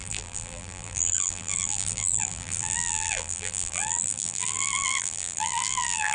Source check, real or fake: fake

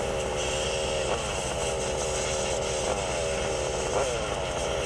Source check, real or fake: real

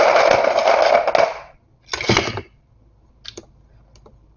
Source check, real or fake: real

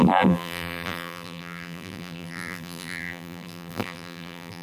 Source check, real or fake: fake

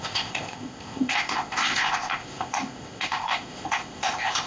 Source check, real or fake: fake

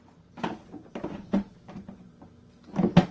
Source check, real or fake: real